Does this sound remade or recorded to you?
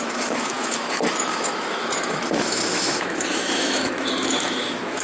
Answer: remade